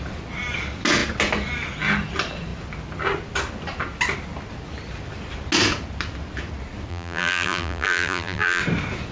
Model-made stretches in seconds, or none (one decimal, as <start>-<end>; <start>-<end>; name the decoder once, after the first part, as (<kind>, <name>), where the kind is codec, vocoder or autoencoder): 6.9-8.6 (vocoder, BigVGAN v2)